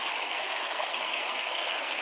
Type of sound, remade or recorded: remade